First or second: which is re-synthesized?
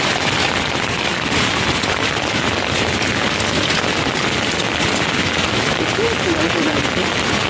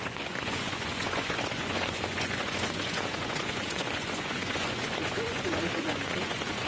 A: second